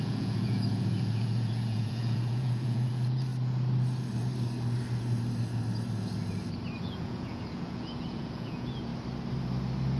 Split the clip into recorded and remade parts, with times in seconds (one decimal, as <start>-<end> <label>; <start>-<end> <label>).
0.0-3.3 remade; 3.3-6.8 recorded; 6.8-8.9 remade; 8.9-10.0 recorded